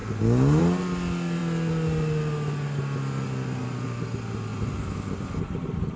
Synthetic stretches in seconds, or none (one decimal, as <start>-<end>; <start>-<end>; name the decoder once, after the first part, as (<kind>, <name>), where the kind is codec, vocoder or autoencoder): 4.5-5.4 (vocoder, BigVGAN v2)